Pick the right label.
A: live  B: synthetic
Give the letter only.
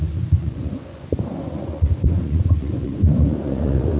B